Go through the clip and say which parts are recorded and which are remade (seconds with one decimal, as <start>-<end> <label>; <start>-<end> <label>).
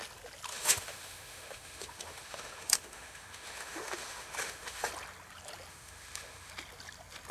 0.0-0.5 recorded; 0.5-4.9 remade; 4.9-5.7 recorded; 5.7-6.5 remade; 6.5-7.3 recorded